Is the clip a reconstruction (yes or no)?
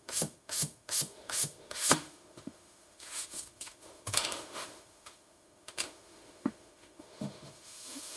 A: yes